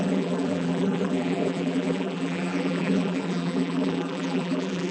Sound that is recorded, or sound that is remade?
remade